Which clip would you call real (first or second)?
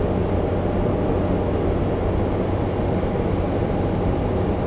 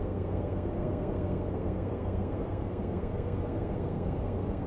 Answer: first